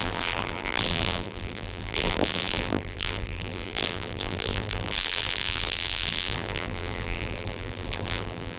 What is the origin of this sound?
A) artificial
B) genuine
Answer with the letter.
A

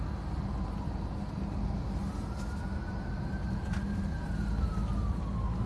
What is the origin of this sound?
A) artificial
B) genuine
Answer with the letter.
B